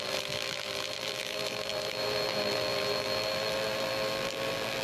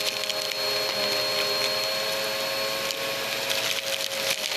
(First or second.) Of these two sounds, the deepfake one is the first